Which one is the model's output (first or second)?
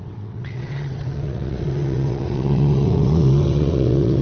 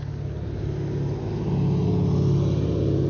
first